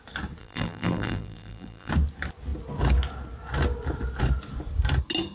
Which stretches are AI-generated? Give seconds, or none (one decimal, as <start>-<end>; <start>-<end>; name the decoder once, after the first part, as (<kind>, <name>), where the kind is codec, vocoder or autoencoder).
0.4-1.9 (vocoder, BigVGAN v2)